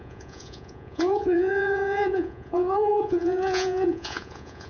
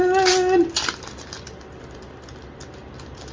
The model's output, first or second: first